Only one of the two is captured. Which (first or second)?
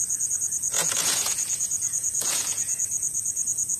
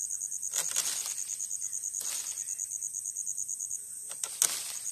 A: second